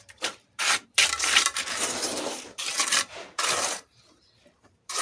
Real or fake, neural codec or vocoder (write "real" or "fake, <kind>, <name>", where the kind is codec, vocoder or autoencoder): fake, vocoder, BigVGAN v2